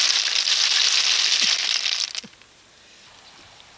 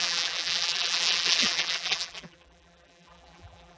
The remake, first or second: second